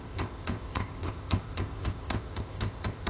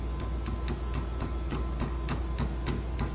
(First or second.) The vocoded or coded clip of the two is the first